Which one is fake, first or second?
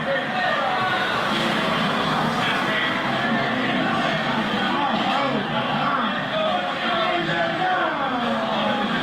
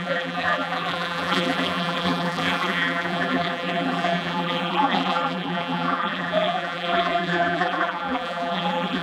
second